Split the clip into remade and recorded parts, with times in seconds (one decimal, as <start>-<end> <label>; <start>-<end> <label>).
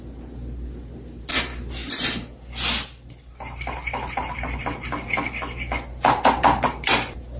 0.0-7.4 recorded